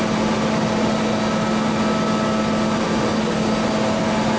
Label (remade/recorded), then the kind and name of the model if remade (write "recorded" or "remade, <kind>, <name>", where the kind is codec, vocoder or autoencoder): recorded